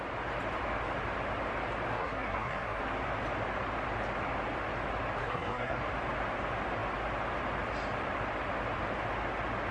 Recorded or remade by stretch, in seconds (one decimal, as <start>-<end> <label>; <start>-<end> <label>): 0.0-1.9 recorded; 1.9-2.8 remade; 2.8-5.2 recorded; 5.2-5.8 remade; 5.8-9.7 recorded